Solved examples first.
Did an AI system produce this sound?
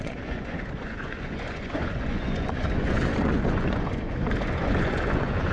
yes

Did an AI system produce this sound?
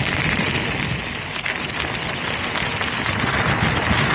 no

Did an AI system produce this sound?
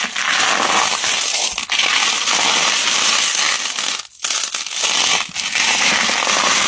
no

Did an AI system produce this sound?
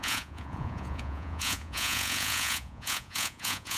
yes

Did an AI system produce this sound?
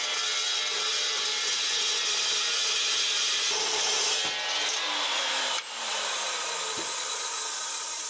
no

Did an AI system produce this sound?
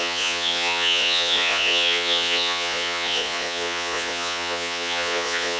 yes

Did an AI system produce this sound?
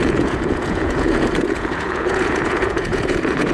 yes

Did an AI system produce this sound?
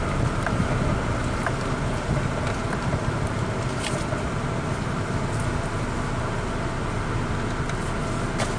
no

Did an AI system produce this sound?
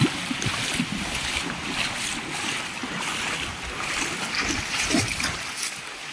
no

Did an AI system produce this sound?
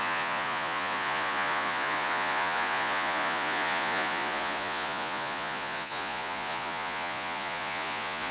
yes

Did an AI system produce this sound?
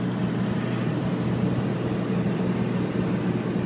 no